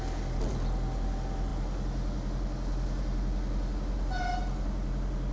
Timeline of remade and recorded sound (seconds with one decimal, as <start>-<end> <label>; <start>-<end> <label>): 0.0-5.3 recorded